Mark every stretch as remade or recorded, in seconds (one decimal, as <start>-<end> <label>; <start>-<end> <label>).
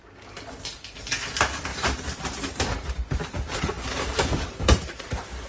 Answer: 0.0-1.7 recorded; 1.7-5.0 remade; 5.0-5.5 recorded